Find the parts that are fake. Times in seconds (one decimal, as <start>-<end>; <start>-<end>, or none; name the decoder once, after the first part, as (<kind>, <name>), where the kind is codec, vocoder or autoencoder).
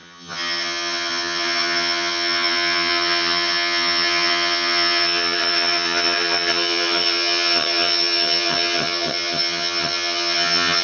0.0-10.8 (vocoder, HiFi-GAN)